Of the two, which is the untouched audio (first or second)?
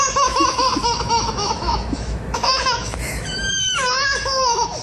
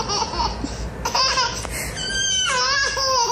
second